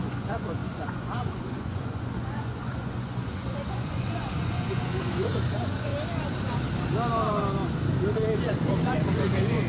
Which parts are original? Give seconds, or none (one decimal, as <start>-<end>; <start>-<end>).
5.9-8.4